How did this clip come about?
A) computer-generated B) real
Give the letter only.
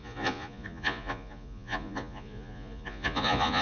A